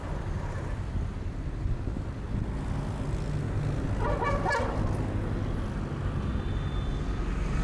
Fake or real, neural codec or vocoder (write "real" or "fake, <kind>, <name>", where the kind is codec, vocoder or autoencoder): real